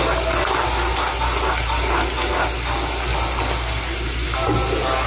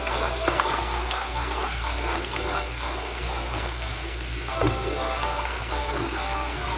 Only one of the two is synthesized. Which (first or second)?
second